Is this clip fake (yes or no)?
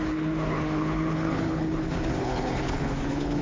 yes